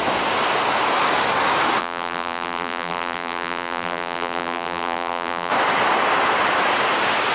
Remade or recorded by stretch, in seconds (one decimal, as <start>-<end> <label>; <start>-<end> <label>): 0.0-1.8 recorded; 1.8-5.5 remade; 5.5-7.3 recorded